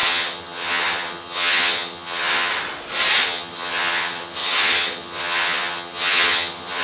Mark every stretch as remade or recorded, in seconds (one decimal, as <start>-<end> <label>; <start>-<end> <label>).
0.0-2.5 remade; 2.5-3.2 recorded; 3.2-6.8 remade